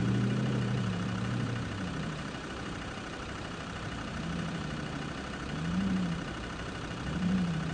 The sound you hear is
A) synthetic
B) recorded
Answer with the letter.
A